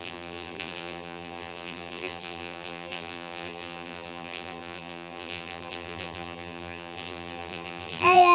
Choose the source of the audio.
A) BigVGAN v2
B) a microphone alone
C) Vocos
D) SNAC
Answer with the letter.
A